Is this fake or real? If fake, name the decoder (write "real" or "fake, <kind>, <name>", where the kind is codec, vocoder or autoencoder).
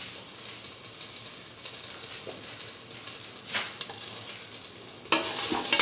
real